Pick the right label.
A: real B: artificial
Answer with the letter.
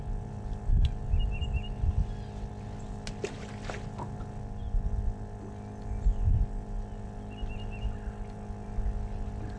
A